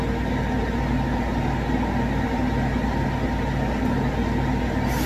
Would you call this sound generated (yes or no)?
no